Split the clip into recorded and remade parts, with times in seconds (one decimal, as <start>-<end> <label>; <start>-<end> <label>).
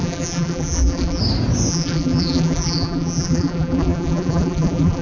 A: 0.0-1.2 remade; 1.2-1.7 recorded; 1.7-5.0 remade